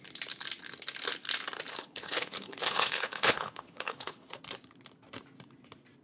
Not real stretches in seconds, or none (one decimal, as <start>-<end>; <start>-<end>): 1.7-4.4

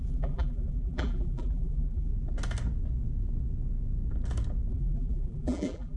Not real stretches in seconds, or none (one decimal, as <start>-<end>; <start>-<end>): 0.0-2.1; 4.7-6.0

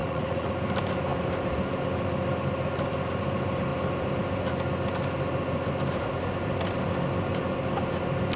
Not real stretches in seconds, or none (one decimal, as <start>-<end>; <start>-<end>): 0.0-0.5

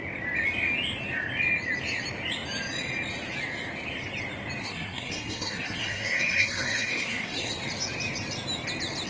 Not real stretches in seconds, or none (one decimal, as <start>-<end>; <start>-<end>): 4.6-7.5

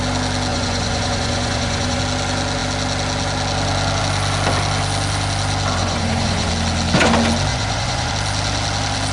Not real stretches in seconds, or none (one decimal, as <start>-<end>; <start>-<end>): 0.5-2.0; 5.8-6.5; 7.5-8.1